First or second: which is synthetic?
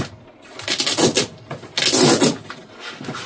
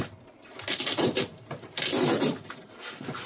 second